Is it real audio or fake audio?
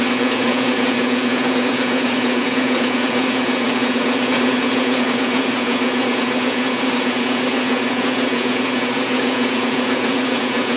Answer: fake